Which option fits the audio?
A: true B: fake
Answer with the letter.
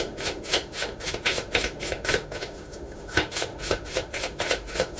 B